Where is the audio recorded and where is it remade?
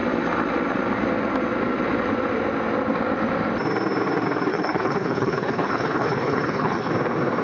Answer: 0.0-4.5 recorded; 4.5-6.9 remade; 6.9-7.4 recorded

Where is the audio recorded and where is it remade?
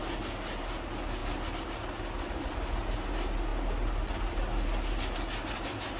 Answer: 0.0-6.0 recorded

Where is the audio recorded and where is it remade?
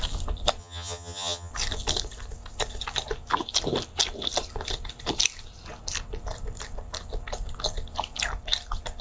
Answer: 0.0-0.6 recorded; 0.6-1.5 remade; 1.5-9.0 recorded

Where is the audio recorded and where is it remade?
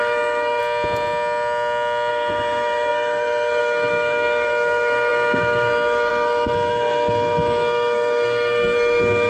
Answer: 0.0-0.6 remade; 0.6-2.1 recorded; 2.1-9.3 remade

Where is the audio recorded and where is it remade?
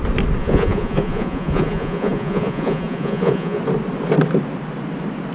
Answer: 0.0-0.4 recorded; 0.4-3.6 remade; 3.6-5.3 recorded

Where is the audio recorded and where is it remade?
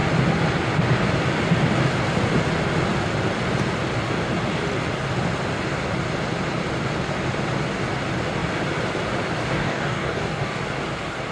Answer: 0.0-9.4 recorded; 9.4-10.6 remade; 10.6-11.3 recorded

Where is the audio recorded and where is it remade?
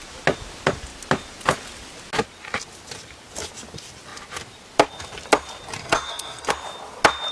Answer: 0.0-5.8 recorded; 5.8-6.5 remade; 6.5-7.3 recorded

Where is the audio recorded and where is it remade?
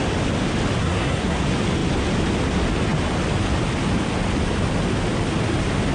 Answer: 0.0-0.8 recorded; 0.8-1.4 remade; 1.4-5.9 recorded